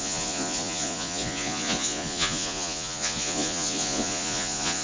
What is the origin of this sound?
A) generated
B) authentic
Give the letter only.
A